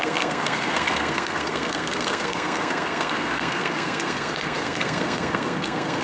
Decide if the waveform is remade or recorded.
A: remade